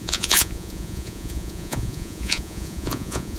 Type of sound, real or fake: fake